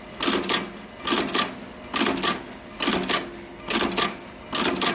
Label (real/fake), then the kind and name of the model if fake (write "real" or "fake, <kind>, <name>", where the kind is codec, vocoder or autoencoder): real